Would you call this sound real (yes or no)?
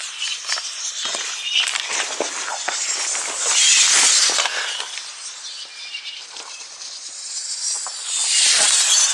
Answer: yes